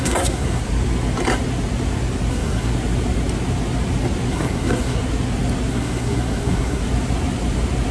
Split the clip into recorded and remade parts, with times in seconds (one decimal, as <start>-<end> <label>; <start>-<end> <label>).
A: 0.0-0.6 remade; 0.6-2.3 recorded; 2.3-2.7 remade; 2.7-4.3 recorded; 4.3-5.0 remade; 5.0-5.7 recorded; 5.7-6.8 remade; 6.8-7.9 recorded